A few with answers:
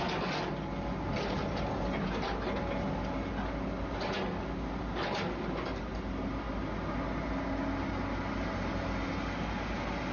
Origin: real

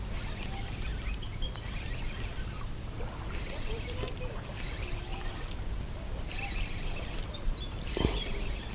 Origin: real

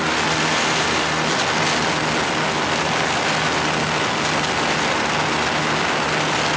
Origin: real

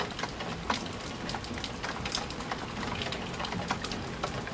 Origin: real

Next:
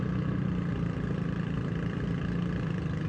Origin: real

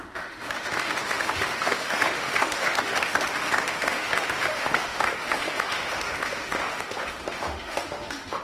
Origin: fake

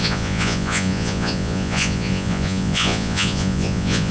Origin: fake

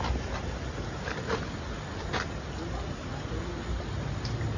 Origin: real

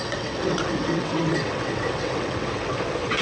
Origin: fake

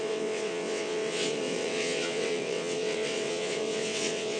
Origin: fake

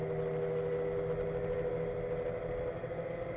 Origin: real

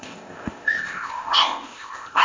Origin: fake